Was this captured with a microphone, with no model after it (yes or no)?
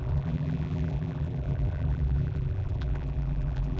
no